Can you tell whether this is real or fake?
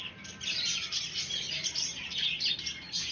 real